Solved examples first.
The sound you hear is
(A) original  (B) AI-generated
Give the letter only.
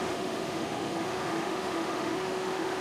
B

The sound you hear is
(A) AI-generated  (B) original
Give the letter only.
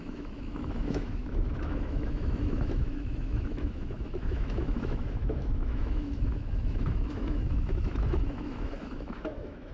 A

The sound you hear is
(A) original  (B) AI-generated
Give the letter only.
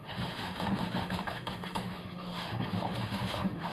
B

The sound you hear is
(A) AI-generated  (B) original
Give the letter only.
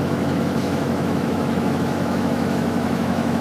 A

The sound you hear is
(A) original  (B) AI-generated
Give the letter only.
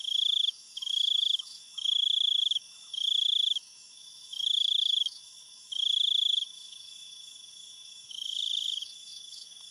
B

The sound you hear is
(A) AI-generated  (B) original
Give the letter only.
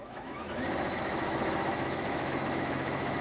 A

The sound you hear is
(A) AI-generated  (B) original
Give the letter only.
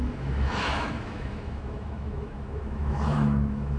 A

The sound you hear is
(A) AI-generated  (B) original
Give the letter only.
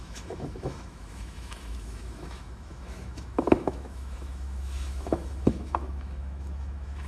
A